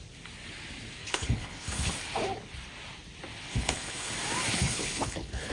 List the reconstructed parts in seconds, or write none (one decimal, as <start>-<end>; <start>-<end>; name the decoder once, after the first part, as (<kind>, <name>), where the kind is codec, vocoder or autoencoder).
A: 1.0-1.9 (codec, HILCodec); 3.5-4.1; 4.5-5.5